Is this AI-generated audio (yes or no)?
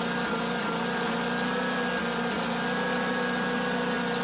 no